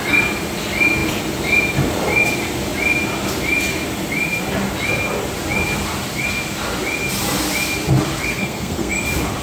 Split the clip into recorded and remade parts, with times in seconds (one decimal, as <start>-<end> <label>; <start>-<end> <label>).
0.0-8.2 recorded; 8.2-8.9 remade; 8.9-9.4 recorded